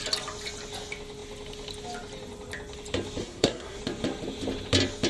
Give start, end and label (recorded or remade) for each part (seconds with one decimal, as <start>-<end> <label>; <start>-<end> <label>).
0.0-3.2 recorded; 3.2-3.8 remade; 3.8-5.1 recorded